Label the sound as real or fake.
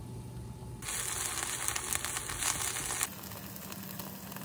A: real